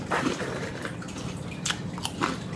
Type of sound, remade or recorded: remade